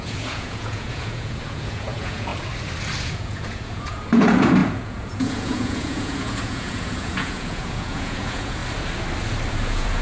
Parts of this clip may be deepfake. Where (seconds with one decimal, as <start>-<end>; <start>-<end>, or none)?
0.0-2.3; 3.0-8.6; 9.5-10.0